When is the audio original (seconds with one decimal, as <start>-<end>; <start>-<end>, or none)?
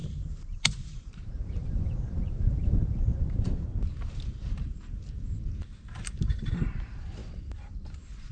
none